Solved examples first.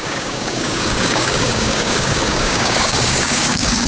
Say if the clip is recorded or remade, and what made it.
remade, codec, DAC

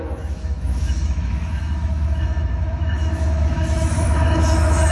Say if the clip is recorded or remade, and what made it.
remade, autoencoder, DAC-VAE